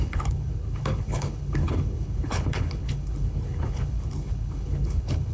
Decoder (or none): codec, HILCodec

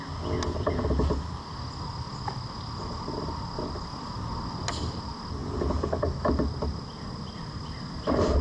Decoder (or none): none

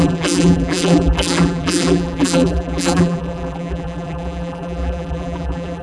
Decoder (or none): vocoder, BigVGAN v2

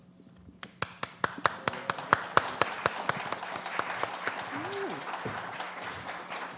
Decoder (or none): none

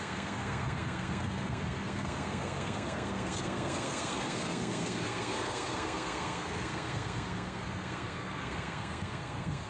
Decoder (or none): codec, SNAC